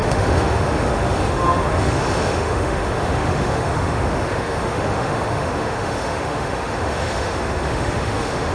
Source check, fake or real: fake